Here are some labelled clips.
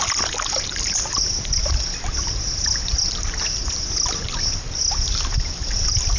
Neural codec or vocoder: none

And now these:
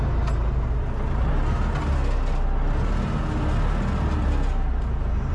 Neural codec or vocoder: none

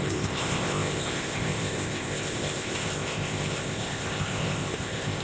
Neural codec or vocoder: codec, ZipCodec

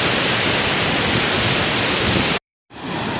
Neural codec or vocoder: none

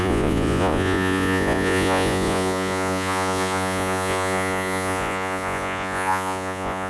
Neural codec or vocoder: vocoder, Vocos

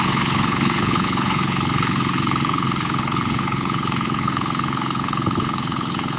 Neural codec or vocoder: codec, HILCodec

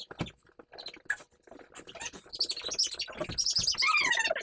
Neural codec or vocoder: none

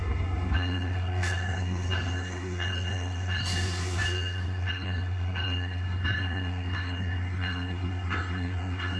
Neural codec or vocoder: codec, SNAC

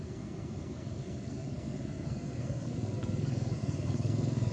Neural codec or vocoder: codec, SNAC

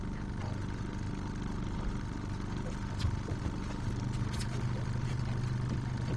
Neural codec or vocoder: none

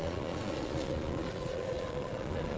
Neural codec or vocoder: vocoder, Vocos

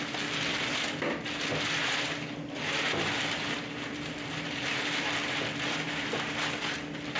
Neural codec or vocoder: none